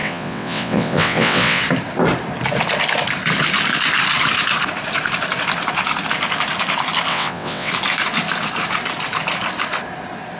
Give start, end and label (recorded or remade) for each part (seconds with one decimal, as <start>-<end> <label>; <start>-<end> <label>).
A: 0.0-1.6 remade; 1.6-7.1 recorded; 7.1-7.7 remade; 7.7-10.4 recorded